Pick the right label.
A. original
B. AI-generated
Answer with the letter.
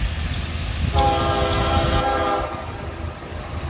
A